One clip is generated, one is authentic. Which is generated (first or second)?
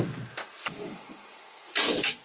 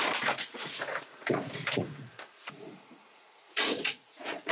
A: second